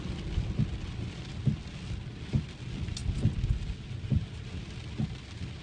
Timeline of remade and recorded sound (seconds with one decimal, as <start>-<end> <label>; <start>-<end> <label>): 0.0-5.6 recorded